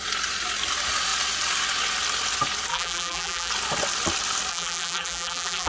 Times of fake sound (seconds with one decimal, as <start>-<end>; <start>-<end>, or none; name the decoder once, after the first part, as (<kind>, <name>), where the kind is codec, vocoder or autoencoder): 2.7-3.5 (vocoder, BigVGAN v2); 4.5-5.7

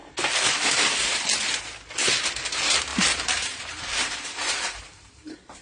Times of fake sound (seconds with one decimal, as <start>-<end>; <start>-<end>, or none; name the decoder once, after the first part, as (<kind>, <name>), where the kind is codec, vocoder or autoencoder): 1.2-1.7 (vocoder, BigVGAN v2); 2.5-5.6

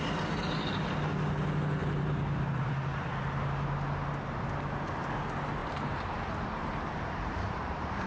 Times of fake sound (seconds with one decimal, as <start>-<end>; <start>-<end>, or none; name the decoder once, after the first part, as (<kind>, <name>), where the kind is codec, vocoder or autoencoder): 1.8-2.7 (vocoder, BigVGAN v2); 5.6-8.1

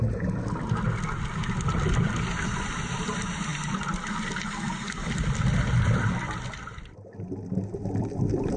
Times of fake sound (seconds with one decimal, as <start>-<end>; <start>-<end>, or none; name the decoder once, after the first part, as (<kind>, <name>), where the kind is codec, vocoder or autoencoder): none

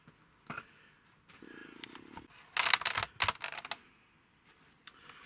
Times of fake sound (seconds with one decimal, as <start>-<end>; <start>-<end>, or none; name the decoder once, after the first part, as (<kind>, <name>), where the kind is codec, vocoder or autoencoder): none

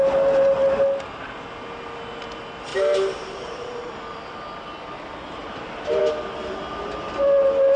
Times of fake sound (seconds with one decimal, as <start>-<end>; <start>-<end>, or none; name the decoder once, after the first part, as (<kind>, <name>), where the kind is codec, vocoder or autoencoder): 2.7-3.9 (vocoder, BigVGAN v2); 5.4-6.0

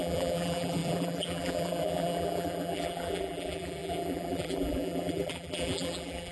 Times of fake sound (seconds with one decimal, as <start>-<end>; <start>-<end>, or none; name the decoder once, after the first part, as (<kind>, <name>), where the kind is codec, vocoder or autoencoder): 0.0-6.3 (vocoder, BigVGAN v2)

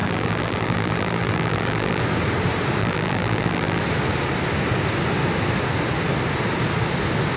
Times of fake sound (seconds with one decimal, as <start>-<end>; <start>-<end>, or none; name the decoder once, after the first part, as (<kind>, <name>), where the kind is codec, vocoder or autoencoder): 0.0-2.0 (vocoder, BigVGAN v2); 2.8-3.8